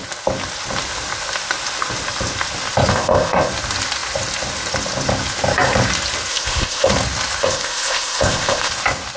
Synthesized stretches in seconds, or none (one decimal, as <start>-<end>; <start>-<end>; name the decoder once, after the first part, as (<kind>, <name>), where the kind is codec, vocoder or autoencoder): 2.9-3.5 (codec, ZipCodec); 6.3-6.9; 7.4-8.7